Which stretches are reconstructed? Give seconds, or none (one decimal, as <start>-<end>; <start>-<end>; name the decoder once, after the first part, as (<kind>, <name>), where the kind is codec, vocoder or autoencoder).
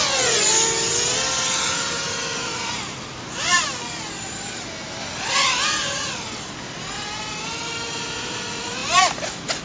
none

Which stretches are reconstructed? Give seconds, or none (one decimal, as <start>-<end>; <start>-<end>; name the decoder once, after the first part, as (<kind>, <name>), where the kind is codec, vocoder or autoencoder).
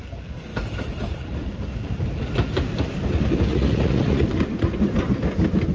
3.5-4.3 (vocoder, Vocos)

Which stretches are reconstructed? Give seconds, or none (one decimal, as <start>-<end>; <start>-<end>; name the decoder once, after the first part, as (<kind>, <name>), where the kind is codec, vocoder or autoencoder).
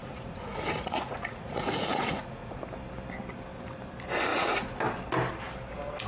0.0-2.6 (vocoder, Vocos); 4.3-4.8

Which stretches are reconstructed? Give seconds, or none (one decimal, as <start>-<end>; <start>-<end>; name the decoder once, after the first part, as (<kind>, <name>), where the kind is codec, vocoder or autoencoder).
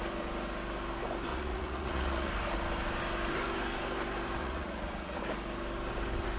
1.3-2.3 (vocoder, Vocos); 4.4-5.2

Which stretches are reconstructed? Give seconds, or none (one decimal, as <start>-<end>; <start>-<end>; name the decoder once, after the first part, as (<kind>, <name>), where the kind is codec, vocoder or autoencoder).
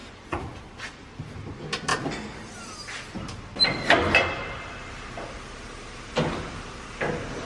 0.0-0.5 (vocoder, Vocos)